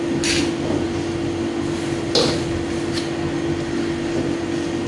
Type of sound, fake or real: real